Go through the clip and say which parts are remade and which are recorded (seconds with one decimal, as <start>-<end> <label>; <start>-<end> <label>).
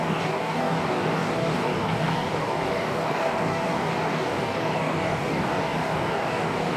0.0-6.8 remade